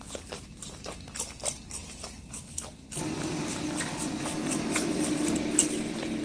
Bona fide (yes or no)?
yes